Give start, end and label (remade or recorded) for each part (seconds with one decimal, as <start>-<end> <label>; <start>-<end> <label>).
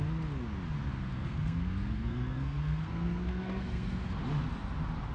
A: 0.0-1.1 recorded; 1.1-4.2 remade; 4.2-5.1 recorded